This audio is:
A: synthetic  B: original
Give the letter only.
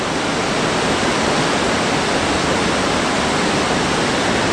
B